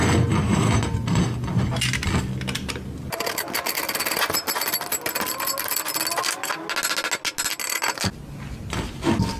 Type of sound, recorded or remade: recorded